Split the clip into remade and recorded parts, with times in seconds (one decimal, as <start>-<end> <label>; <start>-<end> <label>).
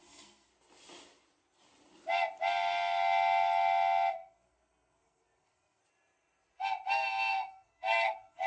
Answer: 0.0-0.5 remade; 0.5-4.1 recorded; 4.1-5.8 remade; 5.8-7.3 recorded; 7.3-8.5 remade